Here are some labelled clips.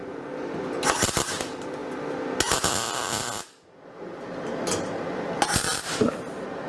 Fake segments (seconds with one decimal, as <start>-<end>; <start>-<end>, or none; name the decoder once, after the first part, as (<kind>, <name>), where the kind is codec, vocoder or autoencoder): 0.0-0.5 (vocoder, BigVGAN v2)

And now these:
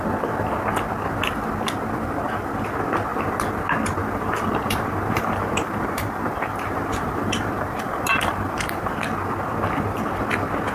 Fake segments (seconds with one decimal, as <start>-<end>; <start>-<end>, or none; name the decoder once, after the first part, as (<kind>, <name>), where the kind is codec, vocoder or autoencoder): 3.1-3.6 (vocoder, BigVGAN v2); 4.0-8.9

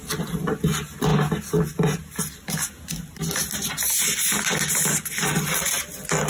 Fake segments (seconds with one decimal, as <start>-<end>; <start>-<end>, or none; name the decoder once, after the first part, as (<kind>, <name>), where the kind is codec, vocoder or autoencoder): none

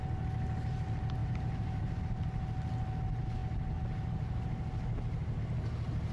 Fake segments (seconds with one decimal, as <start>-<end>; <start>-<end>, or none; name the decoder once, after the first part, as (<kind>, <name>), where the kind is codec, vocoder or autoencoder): 1.2-2.0 (vocoder, BigVGAN v2)

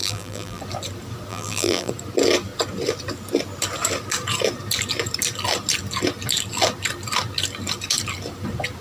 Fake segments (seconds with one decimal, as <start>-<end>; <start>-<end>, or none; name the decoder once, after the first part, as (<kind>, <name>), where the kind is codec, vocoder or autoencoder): 0.0-0.6 (vocoder, BigVGAN v2); 1.3-1.9